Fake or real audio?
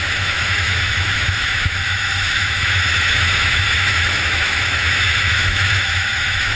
fake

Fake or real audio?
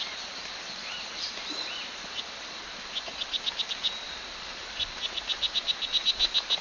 real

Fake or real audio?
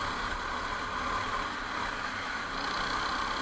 real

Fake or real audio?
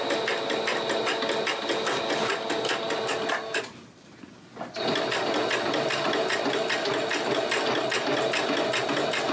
real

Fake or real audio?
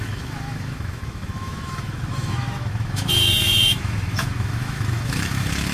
fake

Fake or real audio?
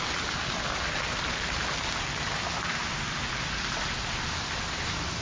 real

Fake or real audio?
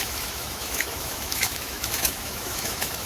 fake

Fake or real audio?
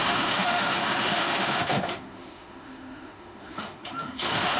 fake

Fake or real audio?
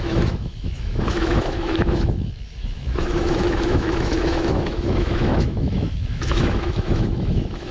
fake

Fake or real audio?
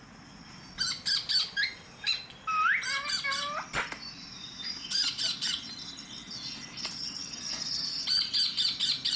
real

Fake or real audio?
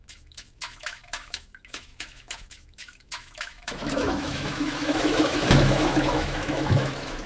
fake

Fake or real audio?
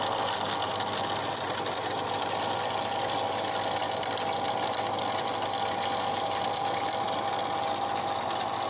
real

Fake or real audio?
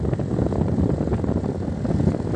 real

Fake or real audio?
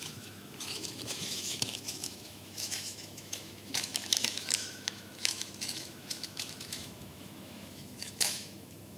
fake